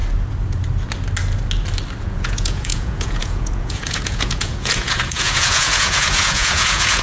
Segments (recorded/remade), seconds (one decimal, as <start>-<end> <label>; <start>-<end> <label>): 0.0-2.0 recorded; 2.0-7.0 remade